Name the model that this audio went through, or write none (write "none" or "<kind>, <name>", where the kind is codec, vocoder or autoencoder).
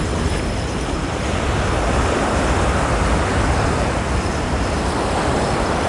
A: none